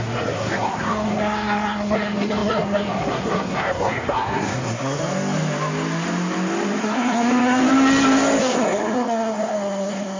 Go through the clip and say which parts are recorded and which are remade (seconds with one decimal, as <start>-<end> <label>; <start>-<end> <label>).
0.0-5.0 remade; 5.0-6.8 recorded; 6.8-7.6 remade; 7.6-8.4 recorded; 8.4-10.2 remade